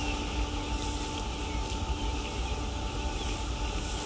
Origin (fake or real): real